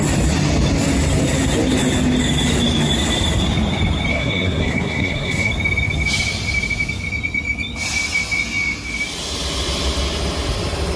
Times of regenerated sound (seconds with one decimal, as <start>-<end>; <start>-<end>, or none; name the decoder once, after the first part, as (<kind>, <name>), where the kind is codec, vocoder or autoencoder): 4.1-5.5 (codec, SNAC)